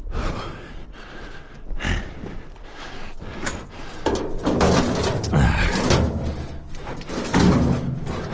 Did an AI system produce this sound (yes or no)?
no